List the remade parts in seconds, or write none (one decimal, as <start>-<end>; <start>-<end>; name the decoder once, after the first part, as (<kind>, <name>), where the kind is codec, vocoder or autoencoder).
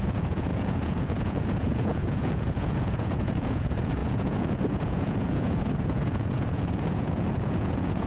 0.0-8.1 (vocoder, Vocos)